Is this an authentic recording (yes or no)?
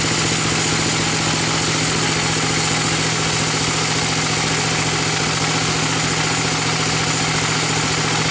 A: yes